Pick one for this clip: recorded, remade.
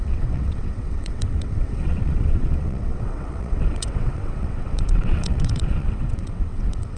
remade